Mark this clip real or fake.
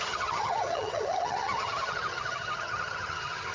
fake